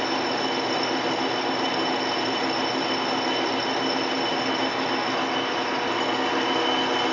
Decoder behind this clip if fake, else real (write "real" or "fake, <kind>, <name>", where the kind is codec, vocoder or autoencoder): real